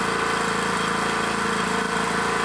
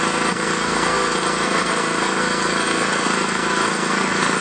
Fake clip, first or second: second